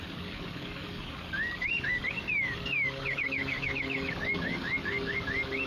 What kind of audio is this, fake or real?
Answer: fake